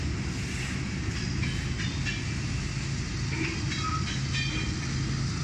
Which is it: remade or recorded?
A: recorded